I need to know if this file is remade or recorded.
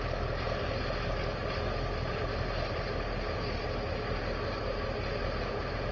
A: recorded